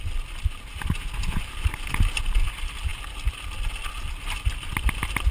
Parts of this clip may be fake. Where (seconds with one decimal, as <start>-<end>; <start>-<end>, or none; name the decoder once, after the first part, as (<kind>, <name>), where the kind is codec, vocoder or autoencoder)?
none